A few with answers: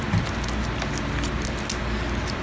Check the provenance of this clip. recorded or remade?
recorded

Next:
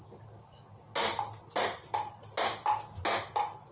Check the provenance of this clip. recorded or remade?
recorded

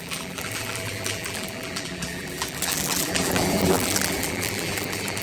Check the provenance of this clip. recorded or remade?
remade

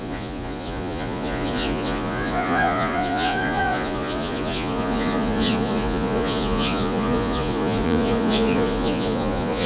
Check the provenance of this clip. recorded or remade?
remade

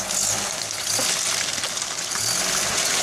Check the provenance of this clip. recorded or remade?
recorded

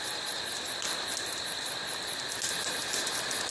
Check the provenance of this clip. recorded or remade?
recorded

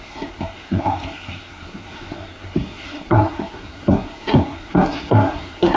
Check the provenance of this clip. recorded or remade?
remade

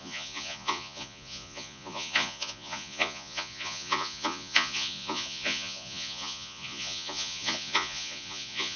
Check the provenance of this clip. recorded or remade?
remade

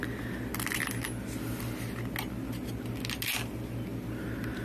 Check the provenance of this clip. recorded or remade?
recorded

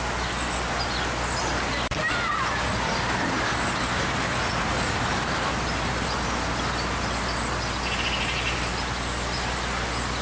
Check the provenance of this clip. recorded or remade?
recorded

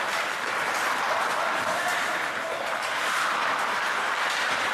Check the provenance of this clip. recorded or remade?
remade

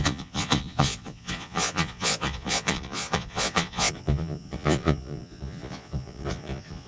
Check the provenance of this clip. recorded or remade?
remade